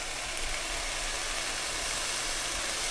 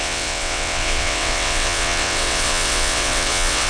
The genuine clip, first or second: first